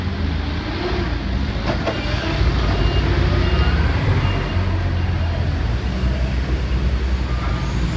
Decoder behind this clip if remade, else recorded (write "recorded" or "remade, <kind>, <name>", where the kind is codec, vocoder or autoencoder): recorded